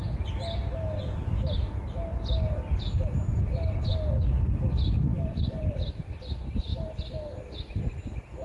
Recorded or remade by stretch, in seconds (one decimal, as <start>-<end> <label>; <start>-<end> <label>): 0.0-5.1 recorded; 5.1-6.2 remade; 6.2-8.4 recorded